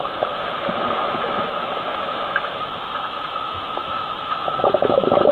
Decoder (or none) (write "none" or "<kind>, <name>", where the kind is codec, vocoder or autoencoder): autoencoder, DAC-VAE